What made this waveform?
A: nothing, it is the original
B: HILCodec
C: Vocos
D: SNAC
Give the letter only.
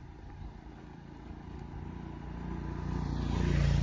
A